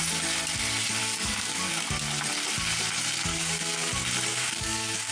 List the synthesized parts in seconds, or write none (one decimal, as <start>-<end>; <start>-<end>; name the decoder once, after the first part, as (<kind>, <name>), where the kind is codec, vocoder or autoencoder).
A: 1.0-1.7 (codec, DAC); 3.3-3.9; 4.3-5.1